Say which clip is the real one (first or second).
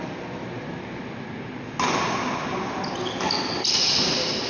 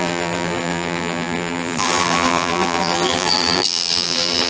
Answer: first